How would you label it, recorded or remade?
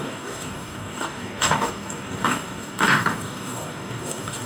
remade